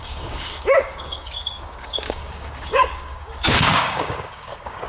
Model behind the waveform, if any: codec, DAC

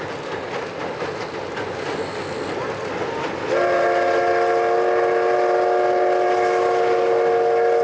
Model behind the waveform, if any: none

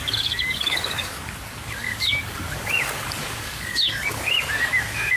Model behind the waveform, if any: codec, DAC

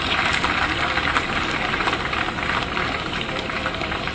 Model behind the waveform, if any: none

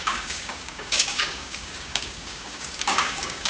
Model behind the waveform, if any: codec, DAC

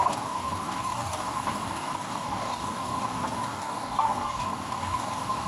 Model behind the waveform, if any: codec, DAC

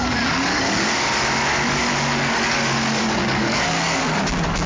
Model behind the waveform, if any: codec, DAC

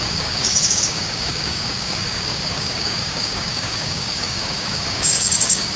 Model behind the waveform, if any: codec, DAC